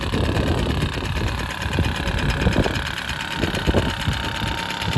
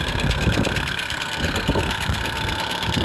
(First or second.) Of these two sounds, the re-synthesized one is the second